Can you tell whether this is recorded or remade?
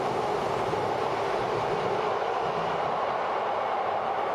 recorded